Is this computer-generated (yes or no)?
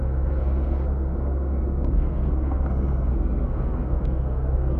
yes